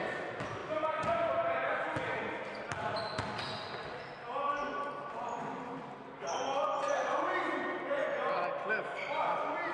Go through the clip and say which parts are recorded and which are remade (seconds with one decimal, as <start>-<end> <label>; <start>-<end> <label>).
0.0-9.7 recorded